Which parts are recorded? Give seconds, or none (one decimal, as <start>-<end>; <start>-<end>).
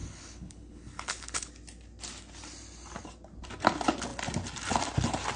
1.5-5.4